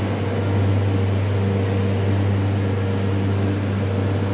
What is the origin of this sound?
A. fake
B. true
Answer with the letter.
B